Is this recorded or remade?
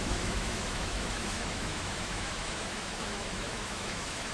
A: remade